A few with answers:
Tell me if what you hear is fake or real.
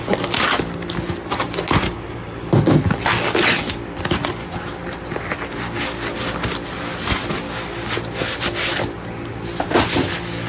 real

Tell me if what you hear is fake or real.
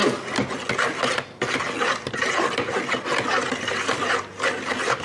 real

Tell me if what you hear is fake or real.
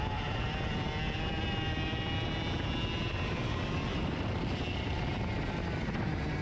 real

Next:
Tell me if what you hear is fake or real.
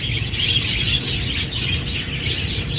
real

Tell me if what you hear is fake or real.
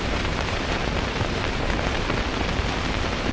fake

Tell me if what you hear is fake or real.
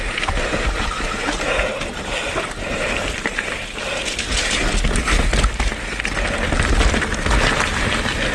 real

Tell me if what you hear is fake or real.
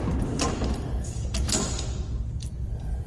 fake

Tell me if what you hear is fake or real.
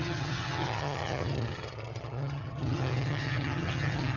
fake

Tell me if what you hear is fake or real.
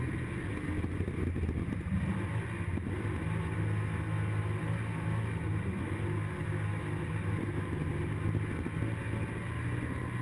real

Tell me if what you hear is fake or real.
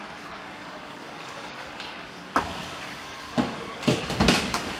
fake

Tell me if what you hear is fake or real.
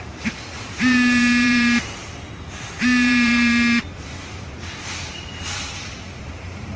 fake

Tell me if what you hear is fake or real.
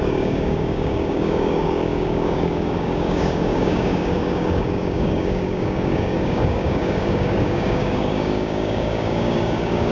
fake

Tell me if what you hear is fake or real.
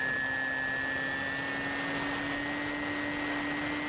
real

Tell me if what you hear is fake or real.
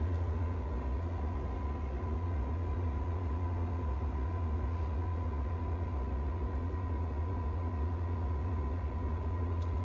fake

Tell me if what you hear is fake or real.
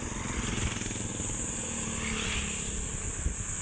real